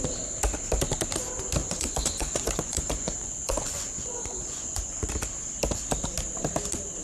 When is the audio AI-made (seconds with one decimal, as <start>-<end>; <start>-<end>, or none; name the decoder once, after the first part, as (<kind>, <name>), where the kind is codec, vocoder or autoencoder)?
1.6-5.1 (vocoder, Vocos)